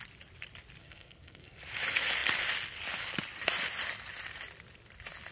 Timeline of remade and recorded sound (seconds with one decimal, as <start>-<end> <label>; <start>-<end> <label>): 0.0-0.8 recorded; 0.8-1.6 remade; 1.6-5.3 recorded